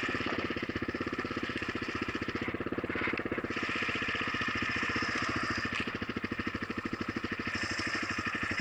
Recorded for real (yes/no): yes